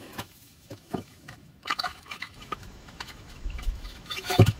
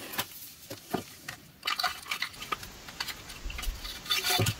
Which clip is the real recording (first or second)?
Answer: second